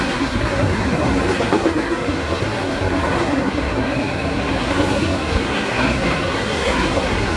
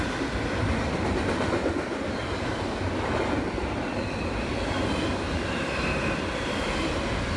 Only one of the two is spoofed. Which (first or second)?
first